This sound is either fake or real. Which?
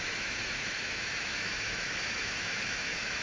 fake